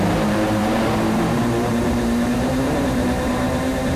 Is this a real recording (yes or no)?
no